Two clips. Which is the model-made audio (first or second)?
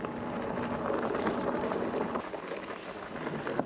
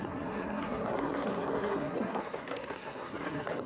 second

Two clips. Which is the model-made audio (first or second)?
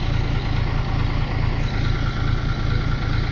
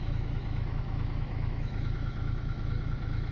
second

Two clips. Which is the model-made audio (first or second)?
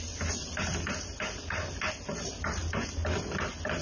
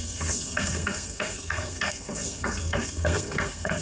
second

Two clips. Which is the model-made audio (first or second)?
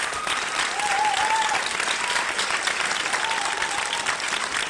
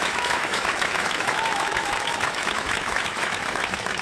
second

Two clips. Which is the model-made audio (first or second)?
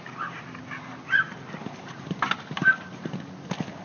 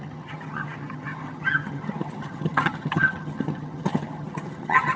second